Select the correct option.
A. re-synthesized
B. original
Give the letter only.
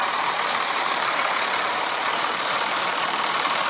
A